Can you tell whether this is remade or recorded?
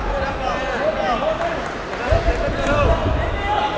recorded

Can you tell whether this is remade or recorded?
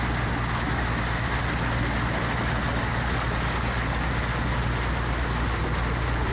recorded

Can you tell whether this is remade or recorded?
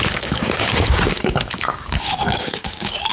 remade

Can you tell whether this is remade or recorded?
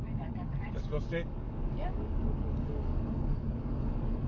remade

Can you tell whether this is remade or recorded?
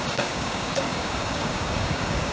remade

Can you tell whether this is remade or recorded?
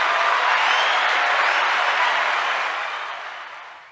recorded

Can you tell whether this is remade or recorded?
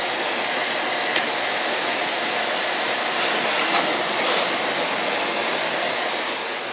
recorded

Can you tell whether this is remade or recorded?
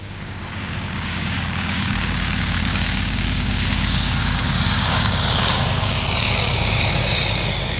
remade